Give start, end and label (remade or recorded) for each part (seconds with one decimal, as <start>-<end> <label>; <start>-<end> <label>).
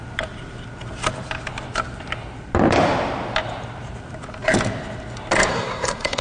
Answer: 0.0-5.5 recorded; 5.5-6.2 remade